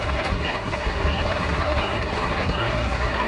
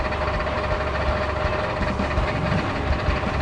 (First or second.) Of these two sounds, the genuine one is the second